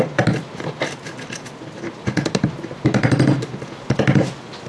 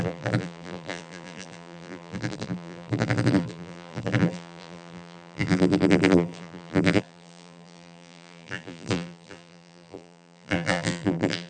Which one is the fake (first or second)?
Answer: second